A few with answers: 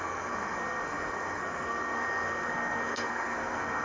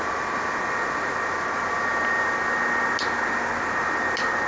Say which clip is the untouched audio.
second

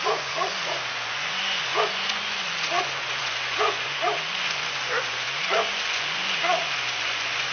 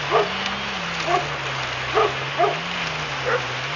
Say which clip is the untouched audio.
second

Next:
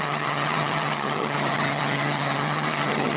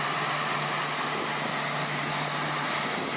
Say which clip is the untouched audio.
second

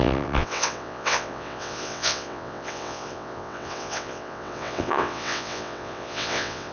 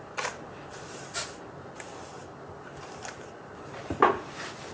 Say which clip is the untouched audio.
second